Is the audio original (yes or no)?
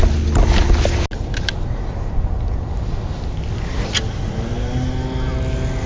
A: yes